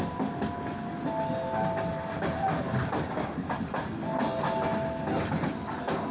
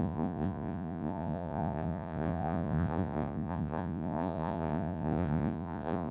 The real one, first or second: first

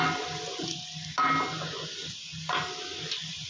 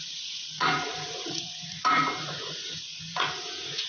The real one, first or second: first